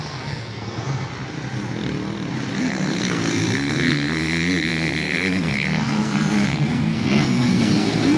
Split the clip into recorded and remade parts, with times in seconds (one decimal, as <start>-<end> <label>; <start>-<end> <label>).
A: 0.0-1.1 remade; 1.1-2.6 recorded; 2.6-8.2 remade